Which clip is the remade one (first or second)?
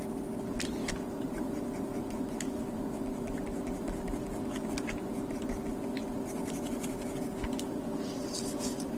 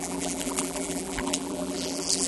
second